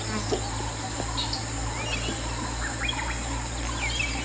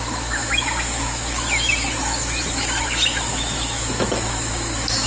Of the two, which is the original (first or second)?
first